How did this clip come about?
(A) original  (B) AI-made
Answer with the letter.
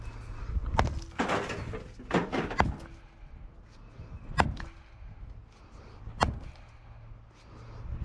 A